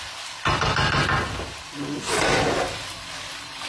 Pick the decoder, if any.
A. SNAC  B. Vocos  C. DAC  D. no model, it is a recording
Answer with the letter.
D